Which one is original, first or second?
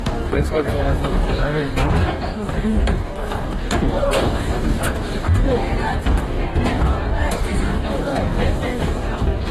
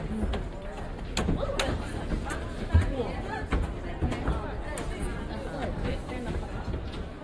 second